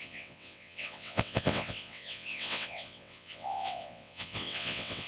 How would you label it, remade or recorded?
remade